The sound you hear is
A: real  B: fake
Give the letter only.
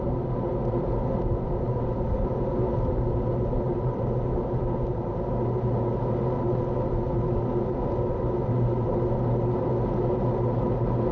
A